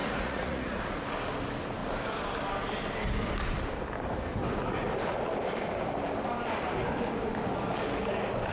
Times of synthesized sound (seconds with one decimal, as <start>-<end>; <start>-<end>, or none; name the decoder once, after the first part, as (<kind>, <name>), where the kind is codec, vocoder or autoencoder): 0.0-0.8 (vocoder, Vocos)